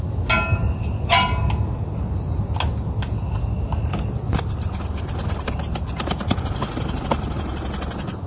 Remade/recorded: recorded